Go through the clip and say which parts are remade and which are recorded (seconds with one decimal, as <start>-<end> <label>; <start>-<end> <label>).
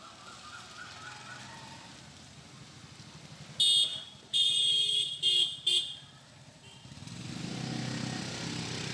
0.0-3.9 recorded; 3.9-7.3 remade; 7.3-8.9 recorded